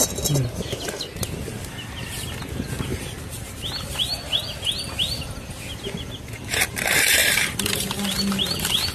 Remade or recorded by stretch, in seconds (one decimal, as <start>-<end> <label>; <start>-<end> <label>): 0.0-2.9 recorded; 2.9-3.6 remade; 3.6-7.2 recorded; 7.2-8.3 remade; 8.3-8.9 recorded